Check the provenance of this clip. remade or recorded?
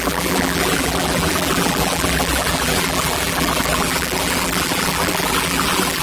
remade